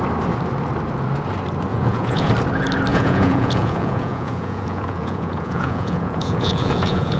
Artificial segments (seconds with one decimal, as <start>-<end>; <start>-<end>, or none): 1.7-2.3; 2.9-7.2